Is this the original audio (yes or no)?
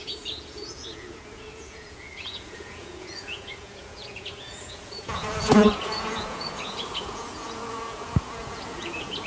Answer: no